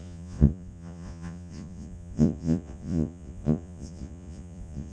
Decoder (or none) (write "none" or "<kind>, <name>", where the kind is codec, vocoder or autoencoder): vocoder, Vocos